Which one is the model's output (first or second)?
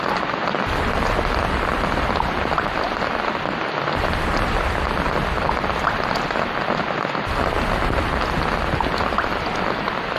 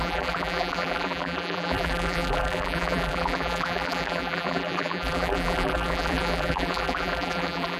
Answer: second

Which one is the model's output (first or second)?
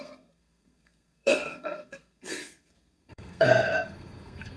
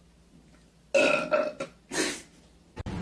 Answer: first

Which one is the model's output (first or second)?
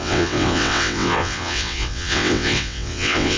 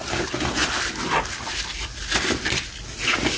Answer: first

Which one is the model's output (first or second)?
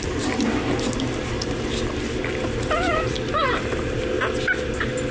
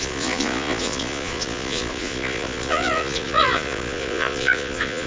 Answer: second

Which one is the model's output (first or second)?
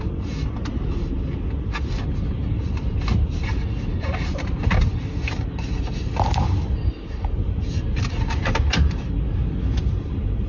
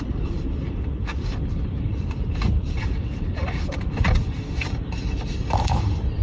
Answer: second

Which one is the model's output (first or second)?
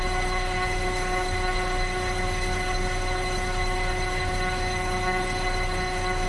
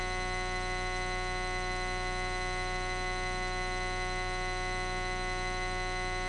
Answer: first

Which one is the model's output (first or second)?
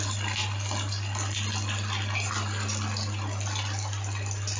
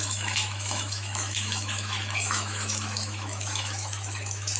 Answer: second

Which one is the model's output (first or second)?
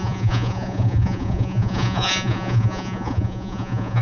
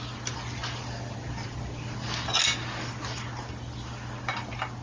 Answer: first